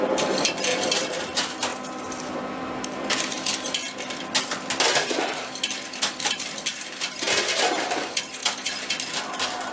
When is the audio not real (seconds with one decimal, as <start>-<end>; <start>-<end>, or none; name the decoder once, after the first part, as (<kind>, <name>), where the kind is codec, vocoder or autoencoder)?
0.0-8.4 (vocoder, BigVGAN v2)